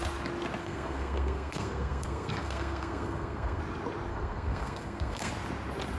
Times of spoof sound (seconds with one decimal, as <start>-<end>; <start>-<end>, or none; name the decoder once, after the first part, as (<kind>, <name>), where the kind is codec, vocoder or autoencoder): 0.6-3.6 (codec, SNAC); 4.1-5.3